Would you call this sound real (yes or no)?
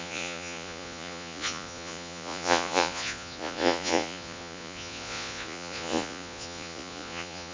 no